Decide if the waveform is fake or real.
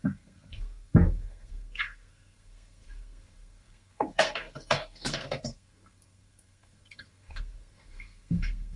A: fake